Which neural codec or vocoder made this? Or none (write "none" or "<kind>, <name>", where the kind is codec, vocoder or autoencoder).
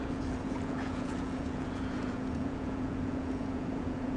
vocoder, Vocos